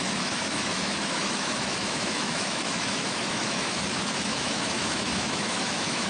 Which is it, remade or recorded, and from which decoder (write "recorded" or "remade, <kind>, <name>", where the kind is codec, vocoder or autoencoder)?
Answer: remade, autoencoder, DAC-VAE